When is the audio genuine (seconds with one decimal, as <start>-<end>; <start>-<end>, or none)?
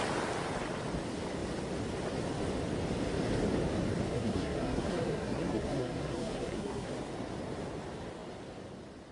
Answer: 0.0-4.1; 6.9-9.1